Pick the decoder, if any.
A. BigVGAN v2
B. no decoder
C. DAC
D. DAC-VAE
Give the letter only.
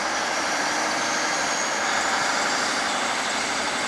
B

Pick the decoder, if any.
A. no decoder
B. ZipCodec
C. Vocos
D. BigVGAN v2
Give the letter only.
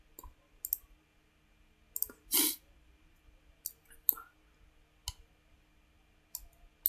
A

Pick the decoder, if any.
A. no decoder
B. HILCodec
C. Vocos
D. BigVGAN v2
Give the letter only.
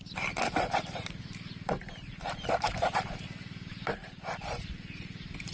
D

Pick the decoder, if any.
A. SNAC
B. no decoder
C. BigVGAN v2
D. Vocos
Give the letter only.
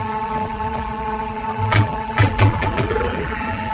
C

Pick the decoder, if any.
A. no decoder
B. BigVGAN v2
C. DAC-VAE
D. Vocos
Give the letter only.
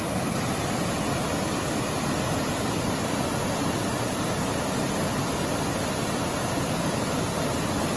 A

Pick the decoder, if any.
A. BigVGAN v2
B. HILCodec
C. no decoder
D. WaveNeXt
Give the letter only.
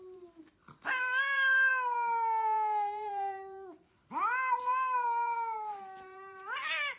A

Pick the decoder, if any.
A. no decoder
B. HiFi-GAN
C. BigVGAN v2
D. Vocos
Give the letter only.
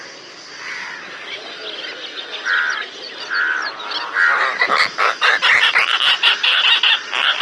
A